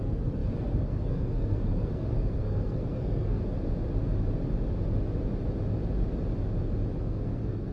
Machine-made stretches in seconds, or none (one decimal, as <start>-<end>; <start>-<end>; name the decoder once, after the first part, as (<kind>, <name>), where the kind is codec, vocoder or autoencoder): 0.0-3.4 (codec, SNAC); 7.0-7.7